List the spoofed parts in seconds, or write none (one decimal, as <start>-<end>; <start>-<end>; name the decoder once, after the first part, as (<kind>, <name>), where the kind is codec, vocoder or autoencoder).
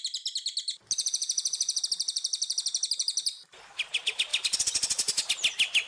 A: 1.0-1.8 (vocoder, BigVGAN v2)